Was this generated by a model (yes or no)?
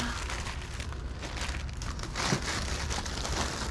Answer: no